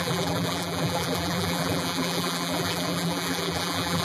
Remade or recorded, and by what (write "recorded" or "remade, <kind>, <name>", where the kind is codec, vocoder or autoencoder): remade, vocoder, BigVGAN v2